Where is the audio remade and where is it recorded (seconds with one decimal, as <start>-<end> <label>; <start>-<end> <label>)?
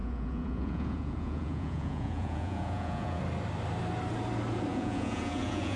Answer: 0.0-3.2 remade; 3.2-4.7 recorded; 4.7-5.8 remade